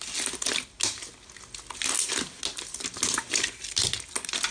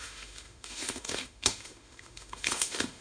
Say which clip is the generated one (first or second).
second